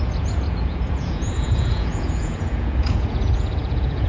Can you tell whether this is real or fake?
fake